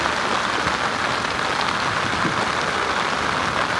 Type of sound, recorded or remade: recorded